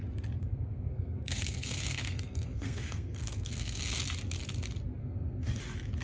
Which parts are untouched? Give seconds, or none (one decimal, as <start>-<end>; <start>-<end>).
0.0-0.4; 4.0-5.0; 5.6-6.0